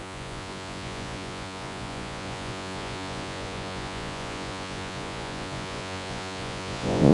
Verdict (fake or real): fake